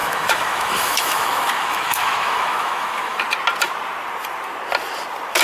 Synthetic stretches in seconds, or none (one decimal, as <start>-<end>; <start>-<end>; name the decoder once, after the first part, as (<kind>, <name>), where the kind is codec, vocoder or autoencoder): 0.0-3.2 (autoencoder, DAC-VAE)